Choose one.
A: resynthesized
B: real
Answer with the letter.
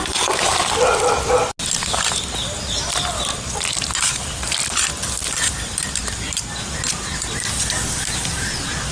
B